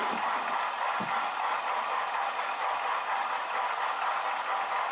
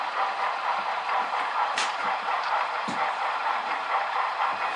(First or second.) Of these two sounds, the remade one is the second